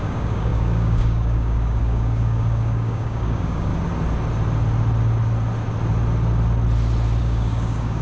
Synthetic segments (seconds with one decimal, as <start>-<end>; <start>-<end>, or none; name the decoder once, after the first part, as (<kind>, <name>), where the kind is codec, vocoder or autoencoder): 0.0-3.7 (codec, DAC); 7.2-8.0